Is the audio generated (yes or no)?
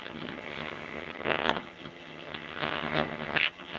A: yes